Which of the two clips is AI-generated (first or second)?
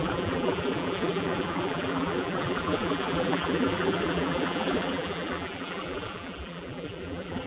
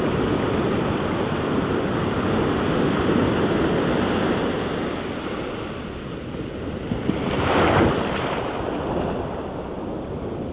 first